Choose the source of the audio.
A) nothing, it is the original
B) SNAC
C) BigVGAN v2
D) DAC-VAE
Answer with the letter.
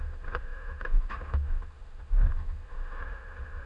D